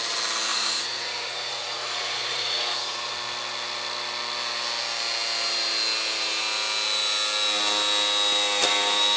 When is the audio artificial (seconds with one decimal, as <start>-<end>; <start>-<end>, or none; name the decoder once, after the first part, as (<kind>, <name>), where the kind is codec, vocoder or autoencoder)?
0.5-3.1 (vocoder, Vocos)